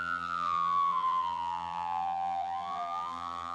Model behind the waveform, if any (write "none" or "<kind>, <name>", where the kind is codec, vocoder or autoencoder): vocoder, BigVGAN v2